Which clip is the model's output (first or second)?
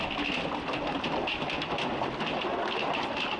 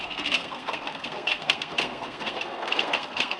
second